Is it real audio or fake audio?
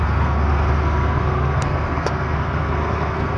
fake